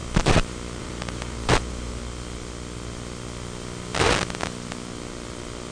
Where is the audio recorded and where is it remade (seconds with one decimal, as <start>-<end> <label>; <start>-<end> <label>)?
0.0-2.0 remade; 2.0-5.7 recorded